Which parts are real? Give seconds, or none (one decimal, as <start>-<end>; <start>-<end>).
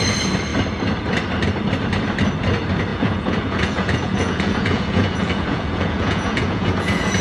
0.0-2.9